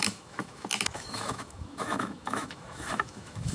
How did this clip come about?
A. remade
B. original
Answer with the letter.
A